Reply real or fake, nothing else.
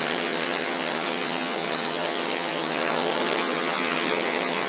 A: fake